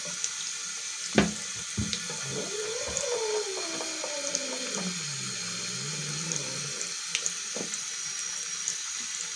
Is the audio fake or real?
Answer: real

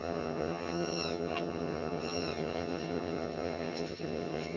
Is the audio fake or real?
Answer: fake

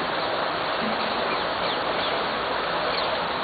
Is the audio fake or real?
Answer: real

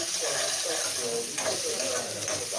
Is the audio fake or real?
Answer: real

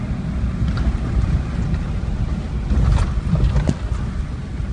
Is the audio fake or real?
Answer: real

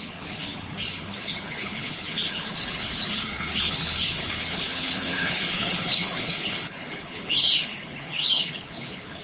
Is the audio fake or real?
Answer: fake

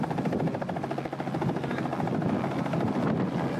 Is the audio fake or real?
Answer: real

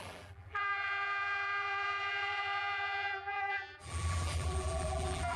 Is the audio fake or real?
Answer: fake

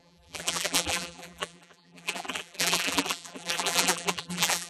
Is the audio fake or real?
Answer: fake